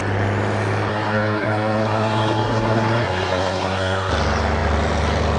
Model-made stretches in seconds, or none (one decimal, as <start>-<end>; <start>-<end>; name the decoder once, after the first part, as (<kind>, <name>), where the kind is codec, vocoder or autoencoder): 0.9-4.1 (codec, SNAC)